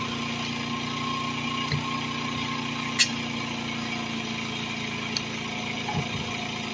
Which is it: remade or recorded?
recorded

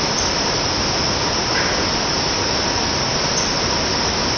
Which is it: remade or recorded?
recorded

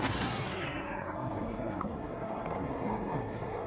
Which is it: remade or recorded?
remade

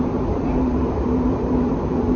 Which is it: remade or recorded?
remade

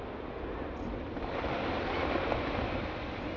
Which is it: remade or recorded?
recorded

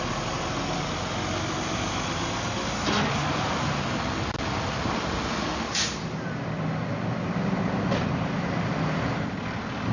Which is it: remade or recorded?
recorded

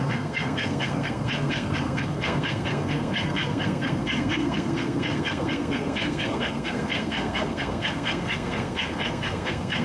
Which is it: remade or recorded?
remade